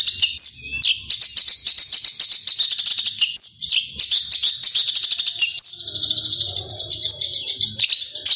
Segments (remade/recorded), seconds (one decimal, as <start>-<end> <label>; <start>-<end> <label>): 0.0-8.4 recorded